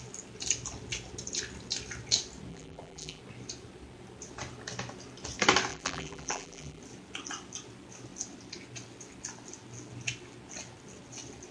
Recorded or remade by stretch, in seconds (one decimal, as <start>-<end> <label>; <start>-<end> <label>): 0.0-2.5 recorded; 2.5-3.2 remade; 3.2-5.7 recorded; 5.7-6.8 remade; 6.8-11.5 recorded